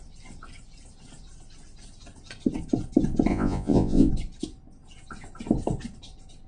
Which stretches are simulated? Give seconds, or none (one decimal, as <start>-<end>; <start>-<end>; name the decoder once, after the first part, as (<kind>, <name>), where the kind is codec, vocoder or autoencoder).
3.3-4.1 (vocoder, Vocos)